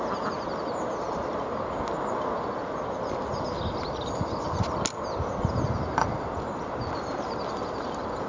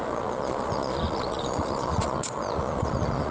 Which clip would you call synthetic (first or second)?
second